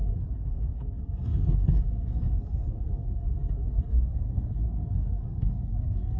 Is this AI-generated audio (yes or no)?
yes